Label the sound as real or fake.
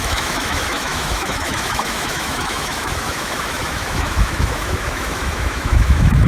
fake